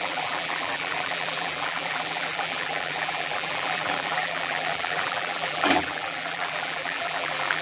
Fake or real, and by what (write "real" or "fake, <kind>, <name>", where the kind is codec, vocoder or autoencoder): fake, vocoder, BigVGAN v2